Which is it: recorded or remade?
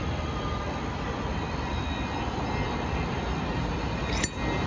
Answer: recorded